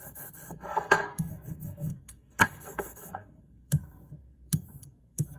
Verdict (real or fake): fake